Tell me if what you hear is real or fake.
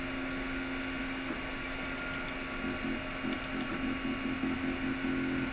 real